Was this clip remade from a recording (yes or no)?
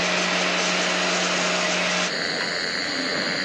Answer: no